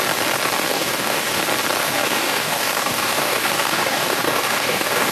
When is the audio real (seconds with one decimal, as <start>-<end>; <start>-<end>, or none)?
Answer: 0.0-0.7; 1.4-1.8

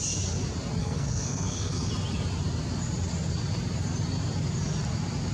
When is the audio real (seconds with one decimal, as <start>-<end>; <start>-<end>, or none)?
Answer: 0.0-0.8; 1.9-5.3

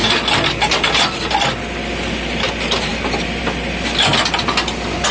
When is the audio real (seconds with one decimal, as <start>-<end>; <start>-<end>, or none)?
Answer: 0.0-5.1

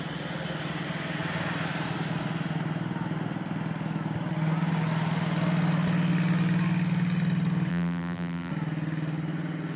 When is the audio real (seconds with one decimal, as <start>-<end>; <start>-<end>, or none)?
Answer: 0.0-7.7; 8.5-9.8

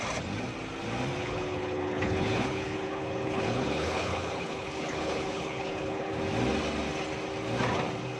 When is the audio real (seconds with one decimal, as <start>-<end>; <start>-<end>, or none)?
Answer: 0.0-1.2; 6.1-8.2